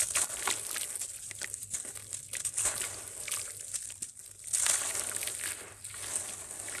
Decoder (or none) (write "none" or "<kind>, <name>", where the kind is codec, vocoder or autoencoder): none